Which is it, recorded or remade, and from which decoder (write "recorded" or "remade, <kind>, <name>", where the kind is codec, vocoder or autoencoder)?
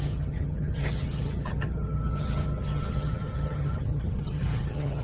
remade, vocoder, HiFi-GAN